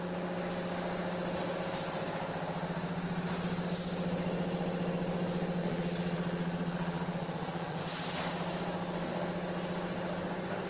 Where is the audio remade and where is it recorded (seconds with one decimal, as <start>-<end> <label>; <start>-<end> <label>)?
0.0-5.6 recorded; 5.6-7.8 remade; 7.8-10.7 recorded